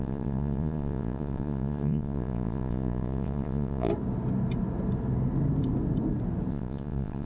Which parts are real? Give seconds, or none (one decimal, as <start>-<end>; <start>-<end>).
3.9-6.5